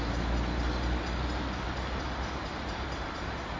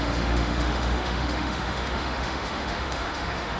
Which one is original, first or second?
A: first